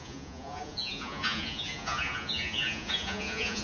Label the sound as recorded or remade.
remade